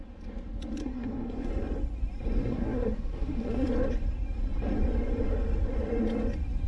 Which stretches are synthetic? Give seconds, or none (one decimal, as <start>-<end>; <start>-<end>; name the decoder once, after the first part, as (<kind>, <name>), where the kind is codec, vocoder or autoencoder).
0.8-1.5 (codec, SNAC); 2.4-3.7

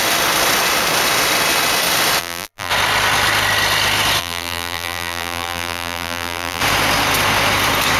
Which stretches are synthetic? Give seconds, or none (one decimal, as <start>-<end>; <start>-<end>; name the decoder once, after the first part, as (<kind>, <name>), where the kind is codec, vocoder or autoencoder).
2.2-2.7 (vocoder, BigVGAN v2); 4.2-6.6

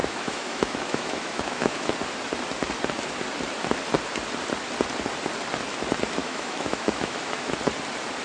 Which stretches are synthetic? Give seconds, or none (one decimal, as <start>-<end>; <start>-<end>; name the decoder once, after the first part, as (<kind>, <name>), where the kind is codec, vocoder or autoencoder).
0.0-1.9 (autoencoder, DAC-VAE); 6.2-7.5